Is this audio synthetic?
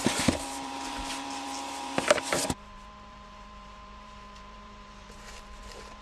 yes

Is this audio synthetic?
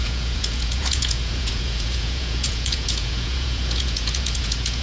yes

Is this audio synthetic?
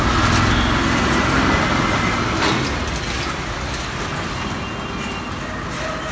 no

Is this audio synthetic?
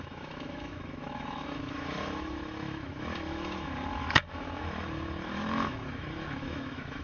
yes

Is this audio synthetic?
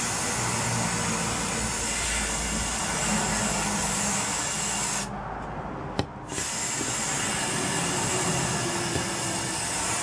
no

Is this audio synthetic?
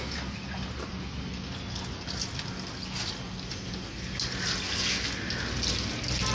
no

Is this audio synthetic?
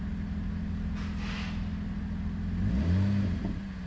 no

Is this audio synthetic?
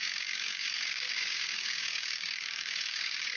yes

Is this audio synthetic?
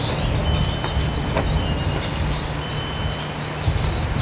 no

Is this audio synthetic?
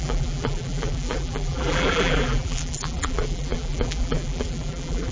yes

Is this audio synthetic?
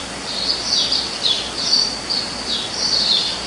yes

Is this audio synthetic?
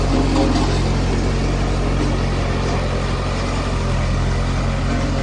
no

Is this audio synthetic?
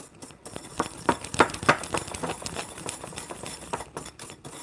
no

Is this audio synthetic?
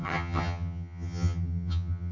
yes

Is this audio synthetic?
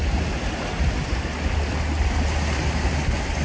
no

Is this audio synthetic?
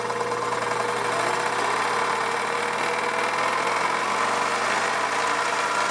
no